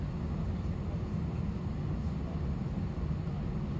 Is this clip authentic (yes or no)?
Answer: yes